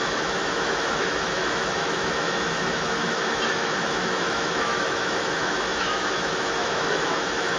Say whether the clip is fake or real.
fake